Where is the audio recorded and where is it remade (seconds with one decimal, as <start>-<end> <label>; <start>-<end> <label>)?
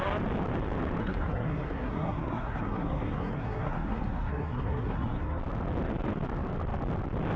0.0-1.0 recorded; 1.0-5.4 remade; 5.4-7.4 recorded